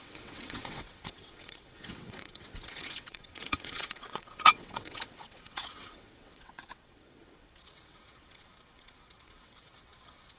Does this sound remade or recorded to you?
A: remade